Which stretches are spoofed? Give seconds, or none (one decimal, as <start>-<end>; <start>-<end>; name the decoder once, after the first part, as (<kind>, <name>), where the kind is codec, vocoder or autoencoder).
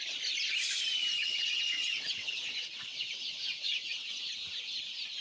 1.2-4.3 (vocoder, WaveNeXt)